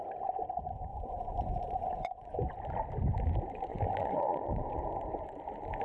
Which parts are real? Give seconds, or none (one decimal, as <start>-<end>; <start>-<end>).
0.0-0.9; 2.4-3.7; 4.8-5.8